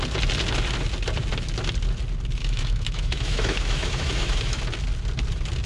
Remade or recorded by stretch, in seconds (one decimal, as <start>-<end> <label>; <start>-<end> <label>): 0.0-2.4 recorded; 2.4-4.6 remade; 4.6-5.7 recorded